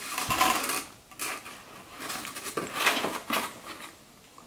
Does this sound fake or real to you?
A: real